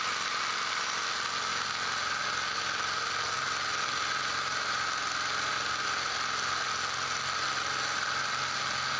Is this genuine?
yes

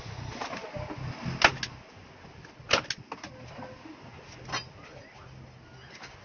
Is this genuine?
yes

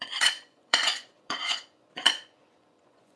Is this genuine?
no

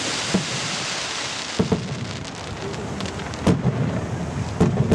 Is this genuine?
yes